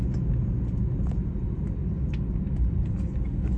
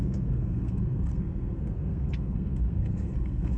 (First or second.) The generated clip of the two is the second